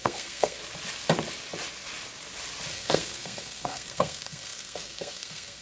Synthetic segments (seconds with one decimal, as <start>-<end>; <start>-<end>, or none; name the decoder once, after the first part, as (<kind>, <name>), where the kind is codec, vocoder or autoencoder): 0.0-0.6 (codec, SNAC); 2.7-5.6